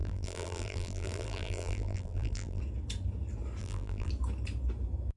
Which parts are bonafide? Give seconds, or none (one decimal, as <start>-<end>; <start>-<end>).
2.6-3.6; 4.1-5.2

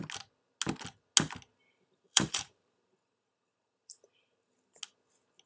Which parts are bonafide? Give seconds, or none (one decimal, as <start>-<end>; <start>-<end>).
0.0-1.5; 4.8-5.5

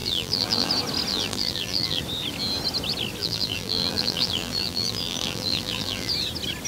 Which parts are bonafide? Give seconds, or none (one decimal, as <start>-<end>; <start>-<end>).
0.7-1.1; 2.0-3.2; 6.1-6.7

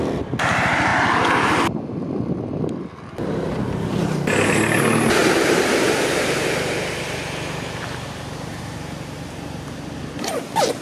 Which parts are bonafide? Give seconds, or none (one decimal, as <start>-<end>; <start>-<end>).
0.0-3.9; 4.4-10.8

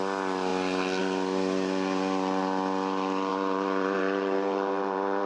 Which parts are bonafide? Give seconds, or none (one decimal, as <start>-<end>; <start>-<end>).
0.0-3.3

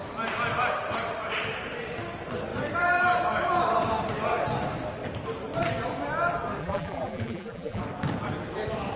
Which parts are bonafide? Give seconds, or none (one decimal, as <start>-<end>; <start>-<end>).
0.0-6.6; 7.8-9.0

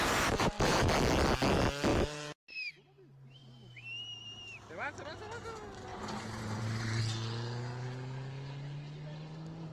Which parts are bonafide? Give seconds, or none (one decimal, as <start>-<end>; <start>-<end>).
0.0-1.9; 2.7-5.9; 7.0-9.7